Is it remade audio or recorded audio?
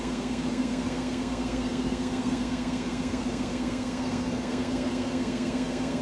remade